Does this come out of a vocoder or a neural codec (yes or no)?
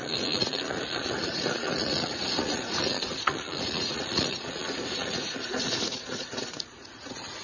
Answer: yes